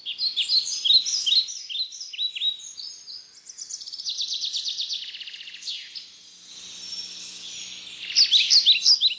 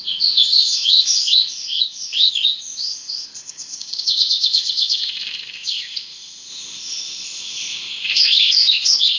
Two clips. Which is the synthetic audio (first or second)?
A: second